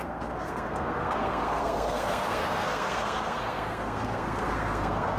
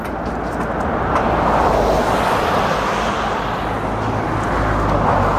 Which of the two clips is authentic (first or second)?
second